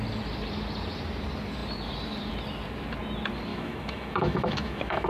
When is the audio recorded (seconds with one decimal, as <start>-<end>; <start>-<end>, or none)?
0.0-3.5